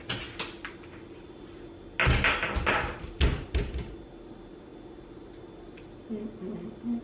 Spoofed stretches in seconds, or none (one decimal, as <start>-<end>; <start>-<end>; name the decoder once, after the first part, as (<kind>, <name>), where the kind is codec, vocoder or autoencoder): none